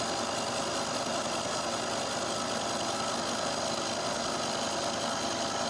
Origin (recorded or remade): recorded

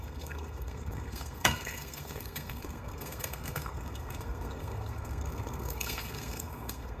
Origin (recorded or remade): remade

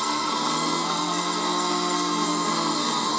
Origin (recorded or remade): remade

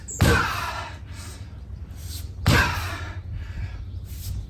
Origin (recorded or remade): recorded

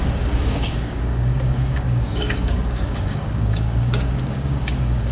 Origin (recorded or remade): remade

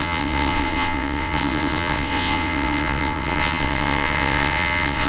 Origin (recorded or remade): remade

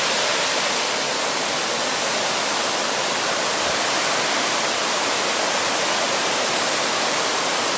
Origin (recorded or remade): recorded